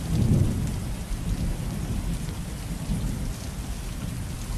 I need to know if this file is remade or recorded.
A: recorded